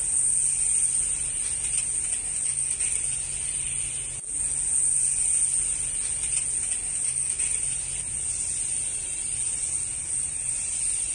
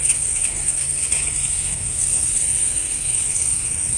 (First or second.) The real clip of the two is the first